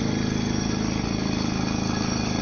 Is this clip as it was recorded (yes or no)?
yes